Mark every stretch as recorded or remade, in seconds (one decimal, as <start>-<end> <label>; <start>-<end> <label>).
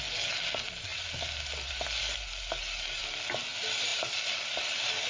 0.0-5.1 recorded